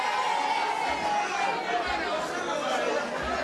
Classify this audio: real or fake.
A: real